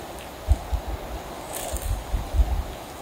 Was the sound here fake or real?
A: real